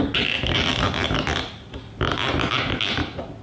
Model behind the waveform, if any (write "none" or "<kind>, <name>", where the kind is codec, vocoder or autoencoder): none